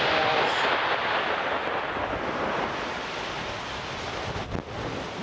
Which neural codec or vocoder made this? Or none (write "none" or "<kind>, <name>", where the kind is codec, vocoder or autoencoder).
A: none